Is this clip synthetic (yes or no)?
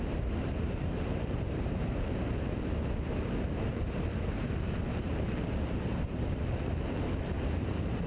yes